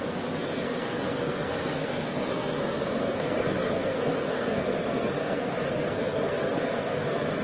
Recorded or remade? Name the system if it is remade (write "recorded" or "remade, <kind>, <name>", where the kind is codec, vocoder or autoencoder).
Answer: remade, codec, SNAC